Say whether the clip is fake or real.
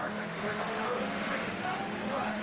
fake